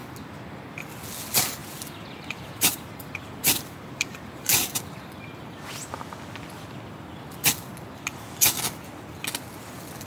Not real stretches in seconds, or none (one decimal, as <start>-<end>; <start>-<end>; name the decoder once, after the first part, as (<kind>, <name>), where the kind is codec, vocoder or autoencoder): 1.6-5.1 (vocoder, BigVGAN v2)